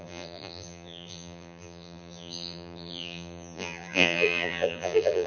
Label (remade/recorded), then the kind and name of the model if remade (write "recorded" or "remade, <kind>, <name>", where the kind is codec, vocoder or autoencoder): remade, vocoder, BigVGAN v2